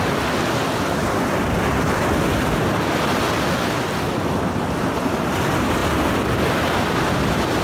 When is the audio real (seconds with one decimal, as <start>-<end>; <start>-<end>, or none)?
0.0-7.6